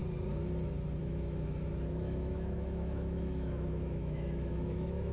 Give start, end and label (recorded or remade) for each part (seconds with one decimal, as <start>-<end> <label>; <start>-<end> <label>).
0.0-1.0 recorded; 1.0-5.1 remade